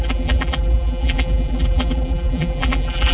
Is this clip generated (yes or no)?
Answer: yes